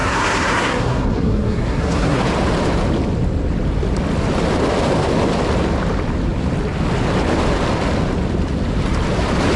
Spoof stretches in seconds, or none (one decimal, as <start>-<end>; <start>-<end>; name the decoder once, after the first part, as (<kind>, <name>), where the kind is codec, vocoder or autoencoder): 0.0-2.2 (codec, SNAC)